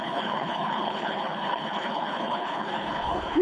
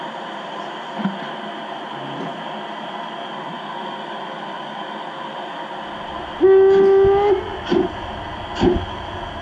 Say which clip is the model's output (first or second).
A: first